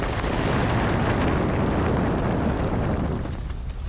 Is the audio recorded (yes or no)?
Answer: yes